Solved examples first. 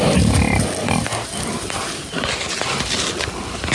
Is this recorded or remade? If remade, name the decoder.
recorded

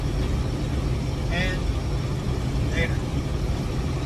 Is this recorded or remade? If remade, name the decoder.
recorded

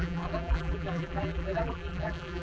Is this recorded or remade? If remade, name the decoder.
remade, vocoder, BigVGAN v2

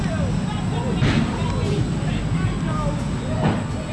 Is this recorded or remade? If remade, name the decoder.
recorded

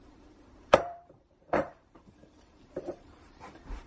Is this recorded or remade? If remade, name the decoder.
remade, vocoder, BigVGAN v2